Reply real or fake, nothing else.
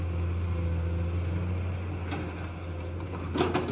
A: real